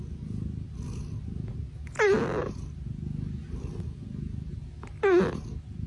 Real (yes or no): yes